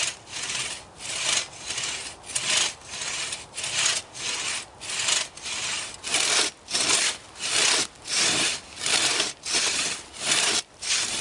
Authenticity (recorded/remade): recorded